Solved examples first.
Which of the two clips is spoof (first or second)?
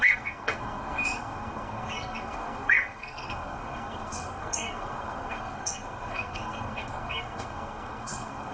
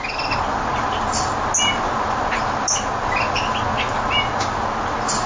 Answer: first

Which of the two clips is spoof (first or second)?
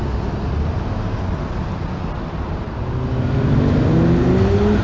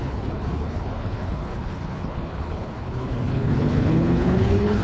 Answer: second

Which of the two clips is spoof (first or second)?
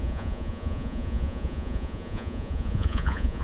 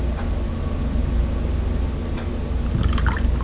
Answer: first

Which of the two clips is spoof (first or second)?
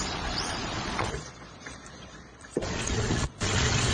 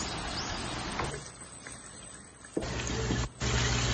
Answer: first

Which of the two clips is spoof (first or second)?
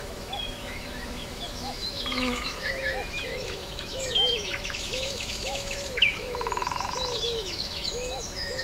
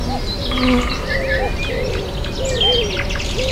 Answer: first